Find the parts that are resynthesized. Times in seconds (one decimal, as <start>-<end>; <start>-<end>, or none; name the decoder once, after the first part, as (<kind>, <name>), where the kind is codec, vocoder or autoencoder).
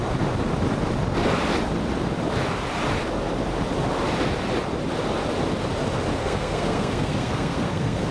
6.2-8.1 (codec, SNAC)